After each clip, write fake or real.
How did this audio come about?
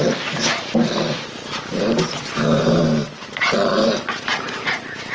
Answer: real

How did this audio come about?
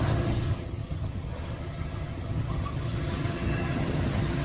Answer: fake